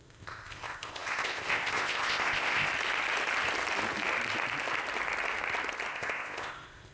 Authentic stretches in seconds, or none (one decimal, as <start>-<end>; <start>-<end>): 2.7-5.9